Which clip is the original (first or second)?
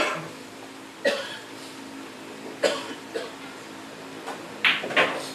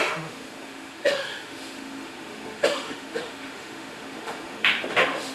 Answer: first